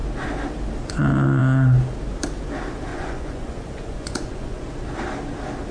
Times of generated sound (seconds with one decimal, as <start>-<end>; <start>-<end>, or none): 2.9-4.6